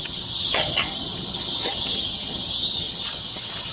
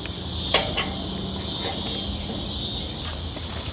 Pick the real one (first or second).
second